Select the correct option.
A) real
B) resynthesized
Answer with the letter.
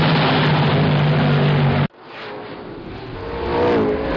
A